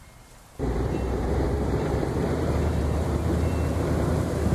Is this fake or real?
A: fake